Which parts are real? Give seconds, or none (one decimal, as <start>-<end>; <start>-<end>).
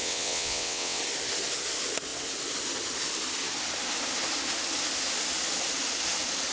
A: 1.0-6.5